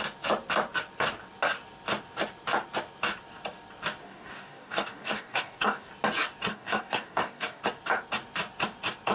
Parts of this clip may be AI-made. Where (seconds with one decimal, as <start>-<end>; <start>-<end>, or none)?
4.0-5.9; 6.5-7.6